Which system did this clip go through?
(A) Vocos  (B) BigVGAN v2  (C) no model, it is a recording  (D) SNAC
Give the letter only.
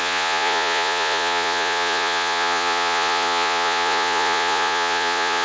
A